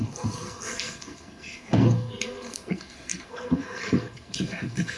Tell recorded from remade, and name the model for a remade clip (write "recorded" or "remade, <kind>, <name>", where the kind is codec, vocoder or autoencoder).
remade, codec, SNAC